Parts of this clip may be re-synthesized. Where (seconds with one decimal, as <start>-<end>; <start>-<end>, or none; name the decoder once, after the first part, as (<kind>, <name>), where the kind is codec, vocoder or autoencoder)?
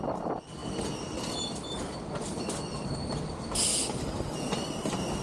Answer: none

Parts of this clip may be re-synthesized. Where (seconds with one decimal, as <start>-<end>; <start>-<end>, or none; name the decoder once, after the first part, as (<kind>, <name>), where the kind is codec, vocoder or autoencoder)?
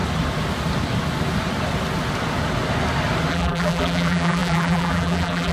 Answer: 3.3-5.5 (vocoder, BigVGAN v2)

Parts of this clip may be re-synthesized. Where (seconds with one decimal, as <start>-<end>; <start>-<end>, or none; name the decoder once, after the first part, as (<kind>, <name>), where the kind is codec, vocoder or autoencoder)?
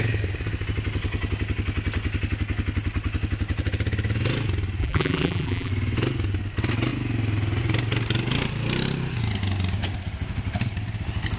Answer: 4.8-5.7 (vocoder, BigVGAN v2)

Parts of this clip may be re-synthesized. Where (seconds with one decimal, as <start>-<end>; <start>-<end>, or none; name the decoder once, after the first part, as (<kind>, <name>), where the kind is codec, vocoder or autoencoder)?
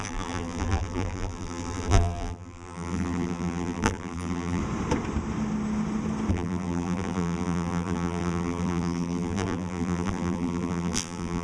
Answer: 0.0-4.6 (vocoder, BigVGAN v2); 6.3-11.4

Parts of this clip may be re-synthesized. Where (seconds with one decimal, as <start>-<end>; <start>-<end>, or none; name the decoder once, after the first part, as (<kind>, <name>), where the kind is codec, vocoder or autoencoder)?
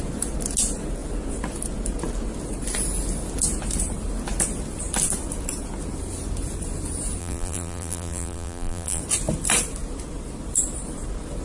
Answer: 7.2-9.0 (vocoder, BigVGAN v2)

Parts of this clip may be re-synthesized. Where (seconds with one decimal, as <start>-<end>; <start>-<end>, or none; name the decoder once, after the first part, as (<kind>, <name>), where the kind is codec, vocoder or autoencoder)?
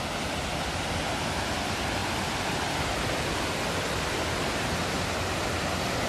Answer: 2.0-3.4 (vocoder, BigVGAN v2)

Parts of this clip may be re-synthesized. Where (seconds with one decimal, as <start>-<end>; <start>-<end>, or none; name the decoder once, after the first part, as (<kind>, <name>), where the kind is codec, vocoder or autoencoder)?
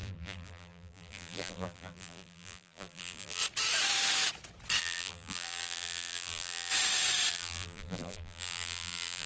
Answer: 0.0-3.4 (vocoder, BigVGAN v2); 4.8-6.7; 7.3-9.3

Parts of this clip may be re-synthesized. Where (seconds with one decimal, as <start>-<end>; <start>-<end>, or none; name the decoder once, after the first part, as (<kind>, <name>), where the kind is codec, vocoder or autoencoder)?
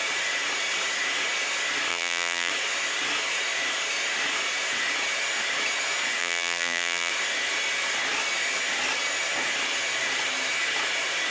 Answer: 1.9-2.5 (vocoder, BigVGAN v2); 6.2-7.1